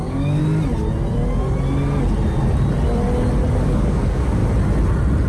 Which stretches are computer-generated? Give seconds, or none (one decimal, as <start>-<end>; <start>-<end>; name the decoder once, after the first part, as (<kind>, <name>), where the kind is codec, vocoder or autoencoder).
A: 0.0-0.4 (codec, DAC); 3.6-4.4